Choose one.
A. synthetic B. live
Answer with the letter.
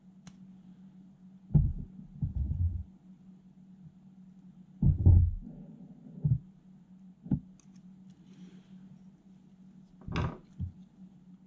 B